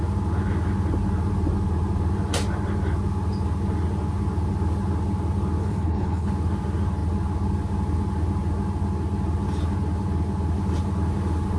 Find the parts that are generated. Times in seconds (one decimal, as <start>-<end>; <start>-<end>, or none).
5.6-6.3